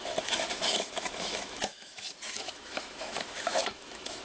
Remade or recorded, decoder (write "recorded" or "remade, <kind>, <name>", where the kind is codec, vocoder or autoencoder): remade, autoencoder, DAC-VAE